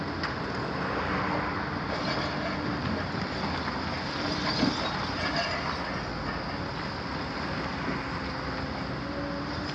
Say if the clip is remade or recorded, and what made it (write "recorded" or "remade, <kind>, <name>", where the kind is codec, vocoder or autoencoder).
recorded